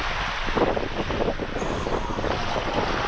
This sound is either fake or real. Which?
real